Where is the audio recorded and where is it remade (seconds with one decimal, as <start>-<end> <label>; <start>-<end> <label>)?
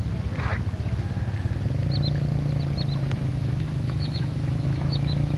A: 0.0-3.3 recorded; 3.3-5.4 remade